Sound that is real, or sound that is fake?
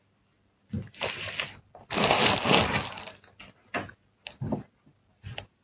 real